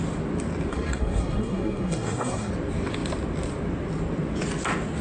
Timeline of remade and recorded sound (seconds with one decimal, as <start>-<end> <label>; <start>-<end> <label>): 0.0-0.7 recorded; 0.7-2.5 remade; 2.5-5.0 recorded